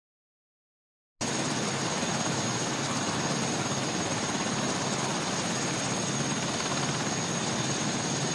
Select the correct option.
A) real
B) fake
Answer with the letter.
A